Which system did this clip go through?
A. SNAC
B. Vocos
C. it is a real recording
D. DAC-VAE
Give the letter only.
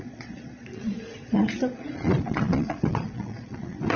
B